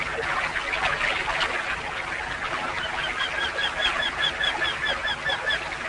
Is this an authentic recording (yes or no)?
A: yes